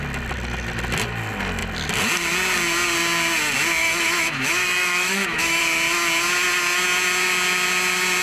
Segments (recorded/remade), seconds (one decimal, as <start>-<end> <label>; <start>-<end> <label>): 0.0-3.8 recorded; 3.8-5.6 remade; 5.6-8.2 recorded